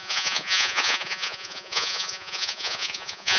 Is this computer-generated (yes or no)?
yes